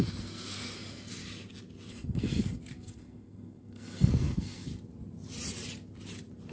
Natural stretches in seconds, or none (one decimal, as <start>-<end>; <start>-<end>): 1.2-1.9; 4.7-6.5